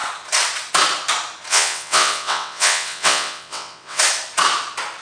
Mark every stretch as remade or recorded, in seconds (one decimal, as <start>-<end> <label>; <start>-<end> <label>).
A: 0.0-1.5 recorded; 1.5-4.0 remade; 4.0-5.0 recorded